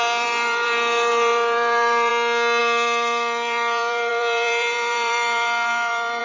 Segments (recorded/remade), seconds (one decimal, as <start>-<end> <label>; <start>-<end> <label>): 0.0-2.1 remade; 2.1-2.6 recorded; 2.6-6.2 remade